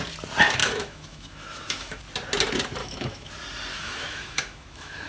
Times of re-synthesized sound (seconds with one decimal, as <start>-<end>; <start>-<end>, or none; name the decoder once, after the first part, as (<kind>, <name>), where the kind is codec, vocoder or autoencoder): 0.6-2.0 (autoencoder, DAC-VAE); 2.8-3.3; 3.7-5.1